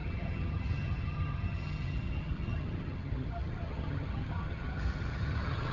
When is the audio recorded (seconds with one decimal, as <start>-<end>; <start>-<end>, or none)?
none